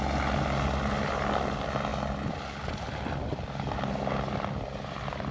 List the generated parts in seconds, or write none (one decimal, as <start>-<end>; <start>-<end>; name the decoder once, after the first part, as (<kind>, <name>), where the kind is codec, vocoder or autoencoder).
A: none